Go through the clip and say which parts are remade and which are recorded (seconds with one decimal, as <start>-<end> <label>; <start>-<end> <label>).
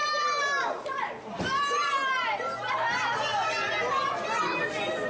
0.0-5.1 recorded